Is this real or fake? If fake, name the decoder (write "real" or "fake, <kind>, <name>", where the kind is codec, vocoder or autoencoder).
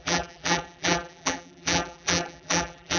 fake, vocoder, BigVGAN v2